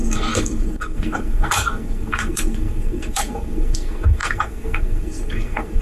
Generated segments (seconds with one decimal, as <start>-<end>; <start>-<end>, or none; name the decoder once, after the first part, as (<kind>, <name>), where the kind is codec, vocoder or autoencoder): 0.0-5.8 (codec, SNAC)